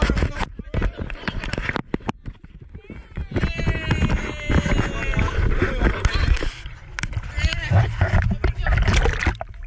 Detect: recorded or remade recorded